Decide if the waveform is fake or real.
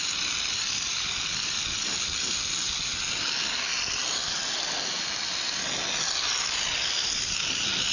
real